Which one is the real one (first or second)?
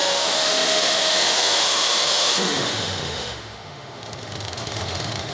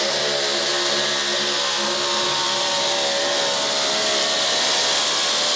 second